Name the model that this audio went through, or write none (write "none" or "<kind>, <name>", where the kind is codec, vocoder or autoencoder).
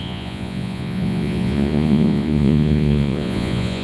vocoder, Vocos